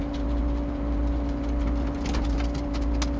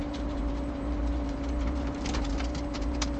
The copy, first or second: second